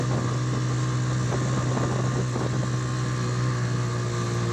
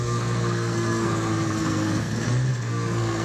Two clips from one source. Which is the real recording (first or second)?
first